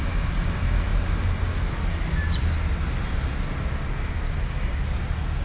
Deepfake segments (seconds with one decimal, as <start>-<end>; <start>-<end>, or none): none